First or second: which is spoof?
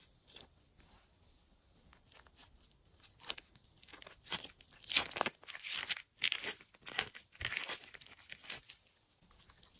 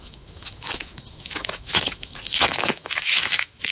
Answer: second